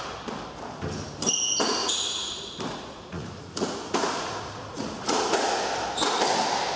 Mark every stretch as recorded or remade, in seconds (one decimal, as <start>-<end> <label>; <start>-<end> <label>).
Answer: 0.0-1.8 recorded; 1.8-5.6 remade; 5.6-6.8 recorded